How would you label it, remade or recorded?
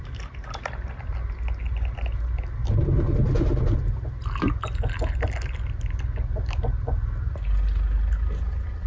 recorded